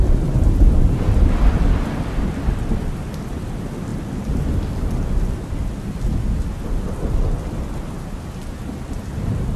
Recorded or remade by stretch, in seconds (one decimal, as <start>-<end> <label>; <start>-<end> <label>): 0.0-9.6 recorded

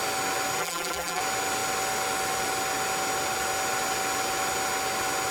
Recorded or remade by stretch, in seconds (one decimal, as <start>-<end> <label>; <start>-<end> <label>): 0.0-0.6 recorded; 0.6-1.2 remade; 1.2-5.3 recorded